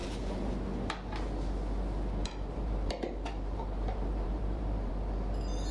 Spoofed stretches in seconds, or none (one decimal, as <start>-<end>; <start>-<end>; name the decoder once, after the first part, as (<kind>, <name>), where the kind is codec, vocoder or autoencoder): 0.0-0.5 (vocoder, BigVGAN v2); 2.2-4.9